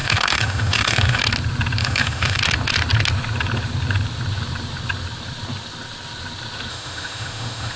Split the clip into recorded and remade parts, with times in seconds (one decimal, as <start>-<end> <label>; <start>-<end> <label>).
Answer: 0.0-1.2 remade; 1.2-1.8 recorded; 1.8-2.4 remade; 2.4-6.7 recorded; 6.7-7.8 remade